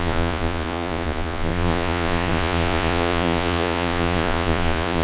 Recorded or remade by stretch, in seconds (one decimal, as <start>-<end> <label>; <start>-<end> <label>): 0.0-5.0 remade